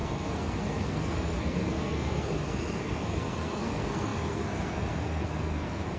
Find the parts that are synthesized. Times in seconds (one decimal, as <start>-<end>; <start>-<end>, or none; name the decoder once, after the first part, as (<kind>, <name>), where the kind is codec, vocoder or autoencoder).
0.0-6.0 (codec, SNAC)